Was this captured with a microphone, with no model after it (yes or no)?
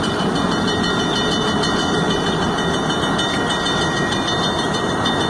yes